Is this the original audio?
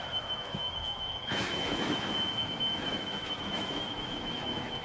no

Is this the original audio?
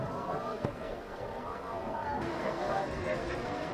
no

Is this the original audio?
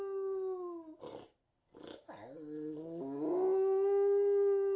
yes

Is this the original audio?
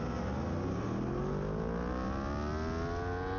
yes